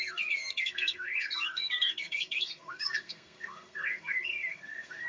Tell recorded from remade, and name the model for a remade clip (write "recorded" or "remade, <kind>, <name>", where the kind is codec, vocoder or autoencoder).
remade, codec, SNAC